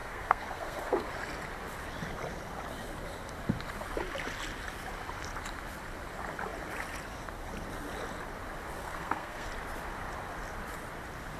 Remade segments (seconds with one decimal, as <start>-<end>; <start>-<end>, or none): 0.0-1.1; 8.8-9.5